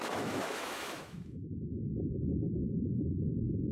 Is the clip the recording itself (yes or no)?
no